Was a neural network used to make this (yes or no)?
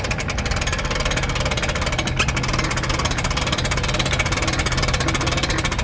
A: no